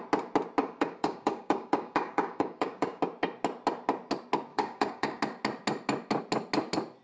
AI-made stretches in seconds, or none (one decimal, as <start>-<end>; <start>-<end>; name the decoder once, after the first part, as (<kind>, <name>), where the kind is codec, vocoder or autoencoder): 0.6-3.0 (codec, DAC); 4.5-5.2